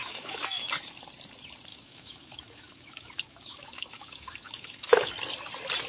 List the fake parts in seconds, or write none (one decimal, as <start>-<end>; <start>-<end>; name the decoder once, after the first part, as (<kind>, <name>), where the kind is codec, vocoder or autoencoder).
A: 0.0-0.7 (autoencoder, DAC-VAE); 1.7-5.1